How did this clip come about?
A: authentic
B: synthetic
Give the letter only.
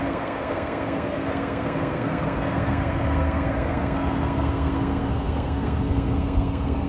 B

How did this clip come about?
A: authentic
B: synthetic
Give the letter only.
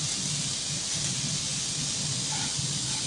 A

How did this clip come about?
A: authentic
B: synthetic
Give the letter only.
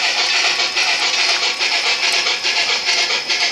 A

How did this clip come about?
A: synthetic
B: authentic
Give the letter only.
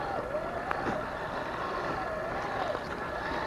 B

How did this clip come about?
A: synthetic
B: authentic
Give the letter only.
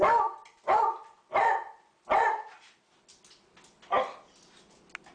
B